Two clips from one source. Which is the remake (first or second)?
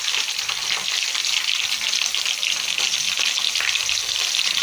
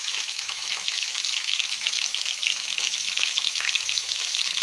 second